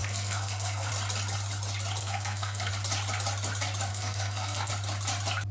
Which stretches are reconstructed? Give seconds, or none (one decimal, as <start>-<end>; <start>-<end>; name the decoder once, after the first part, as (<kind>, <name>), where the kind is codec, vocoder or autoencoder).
0.0-0.9 (codec, SNAC); 2.0-2.7; 3.9-4.7